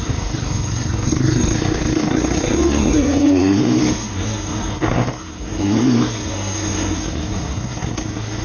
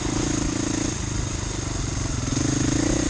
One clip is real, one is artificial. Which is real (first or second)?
second